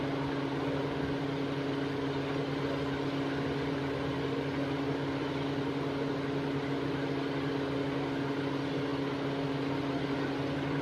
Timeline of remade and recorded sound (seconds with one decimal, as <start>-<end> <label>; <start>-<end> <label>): 0.0-10.8 recorded